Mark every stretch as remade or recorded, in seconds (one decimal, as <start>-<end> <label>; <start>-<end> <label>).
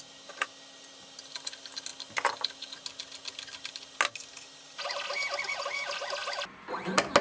0.0-7.2 recorded